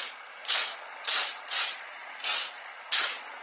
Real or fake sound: fake